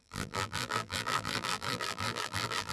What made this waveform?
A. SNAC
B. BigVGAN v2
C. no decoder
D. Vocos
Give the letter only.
B